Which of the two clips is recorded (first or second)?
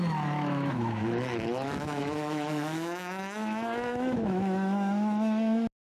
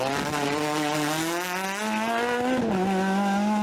second